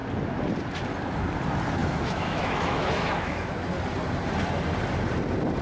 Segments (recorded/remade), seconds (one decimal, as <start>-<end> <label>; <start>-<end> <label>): 0.0-1.8 recorded; 1.8-3.5 remade; 3.5-5.6 recorded